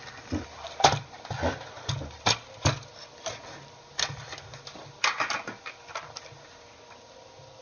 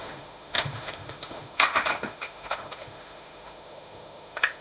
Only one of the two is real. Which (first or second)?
first